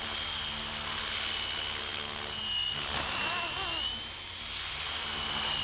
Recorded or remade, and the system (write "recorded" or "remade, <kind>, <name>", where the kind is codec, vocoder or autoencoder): recorded